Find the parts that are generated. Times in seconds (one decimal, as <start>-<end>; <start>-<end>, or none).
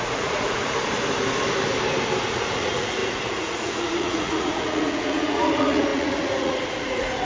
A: 0.0-0.8; 2.2-7.2